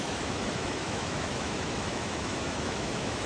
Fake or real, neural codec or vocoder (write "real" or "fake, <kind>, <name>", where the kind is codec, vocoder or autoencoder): fake, autoencoder, DAC-VAE